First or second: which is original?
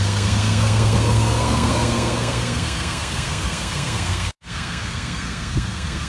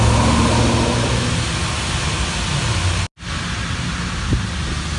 second